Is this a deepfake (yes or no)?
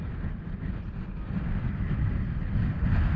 no